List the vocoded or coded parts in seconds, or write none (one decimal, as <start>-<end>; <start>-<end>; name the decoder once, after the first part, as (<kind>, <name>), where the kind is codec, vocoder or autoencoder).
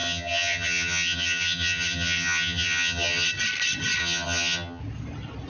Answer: 0.0-3.3 (vocoder, HiFi-GAN); 4.0-4.8